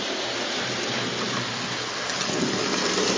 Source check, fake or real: real